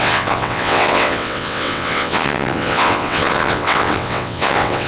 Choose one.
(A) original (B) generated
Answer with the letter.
B